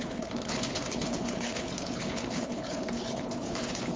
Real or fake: fake